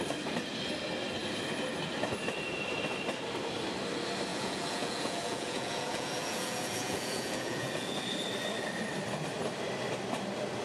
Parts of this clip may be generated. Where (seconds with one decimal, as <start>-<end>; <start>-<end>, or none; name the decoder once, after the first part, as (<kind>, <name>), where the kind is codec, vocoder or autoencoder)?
4.3-8.0 (vocoder, Vocos)